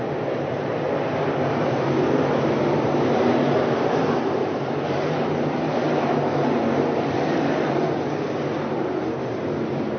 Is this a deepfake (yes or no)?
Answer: yes